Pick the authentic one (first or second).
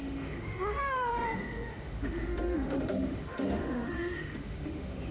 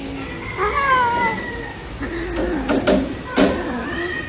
second